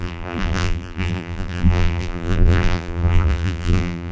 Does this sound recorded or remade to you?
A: remade